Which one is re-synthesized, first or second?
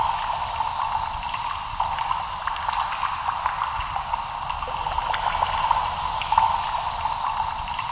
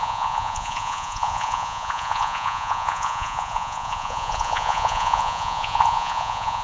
second